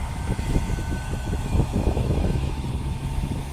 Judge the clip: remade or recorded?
remade